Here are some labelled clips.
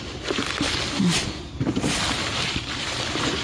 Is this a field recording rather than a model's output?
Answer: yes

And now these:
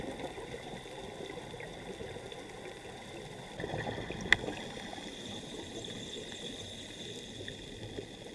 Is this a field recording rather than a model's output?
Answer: yes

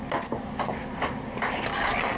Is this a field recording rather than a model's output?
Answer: yes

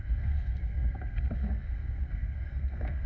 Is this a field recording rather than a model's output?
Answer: no